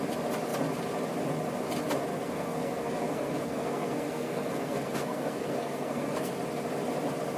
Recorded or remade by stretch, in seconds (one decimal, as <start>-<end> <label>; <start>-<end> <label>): 0.0-2.1 recorded; 2.1-6.3 remade; 6.3-7.4 recorded